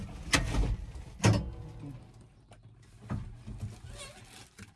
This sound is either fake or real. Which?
real